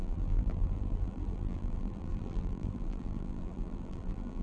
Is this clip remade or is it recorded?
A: remade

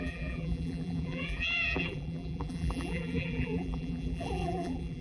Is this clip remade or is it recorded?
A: remade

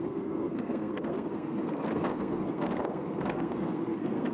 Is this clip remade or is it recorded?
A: remade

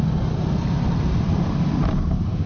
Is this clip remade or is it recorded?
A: recorded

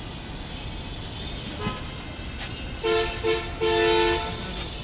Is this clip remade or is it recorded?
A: recorded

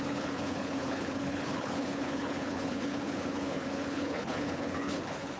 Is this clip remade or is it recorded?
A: remade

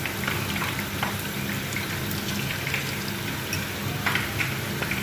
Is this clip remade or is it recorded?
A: remade